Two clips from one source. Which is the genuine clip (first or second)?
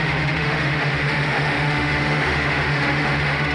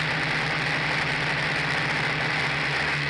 second